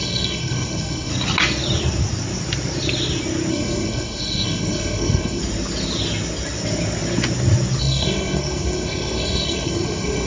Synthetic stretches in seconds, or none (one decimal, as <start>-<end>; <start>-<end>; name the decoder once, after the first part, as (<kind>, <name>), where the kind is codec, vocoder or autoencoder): 0.0-1.1 (codec, SNAC); 3.5-5.4; 7.8-10.3